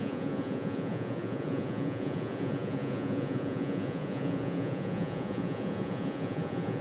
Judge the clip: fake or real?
fake